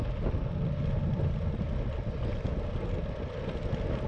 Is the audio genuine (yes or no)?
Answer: yes